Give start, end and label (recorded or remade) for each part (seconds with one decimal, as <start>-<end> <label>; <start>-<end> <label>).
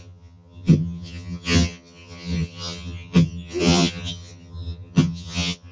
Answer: 0.0-5.7 remade